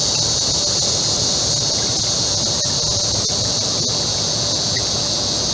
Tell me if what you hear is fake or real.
real